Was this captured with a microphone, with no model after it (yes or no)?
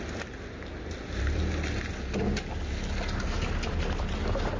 yes